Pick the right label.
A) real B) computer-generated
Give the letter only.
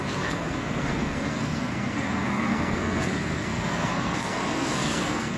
B